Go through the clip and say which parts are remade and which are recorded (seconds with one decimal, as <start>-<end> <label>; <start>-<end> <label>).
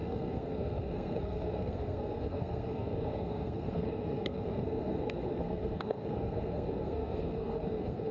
0.0-8.1 remade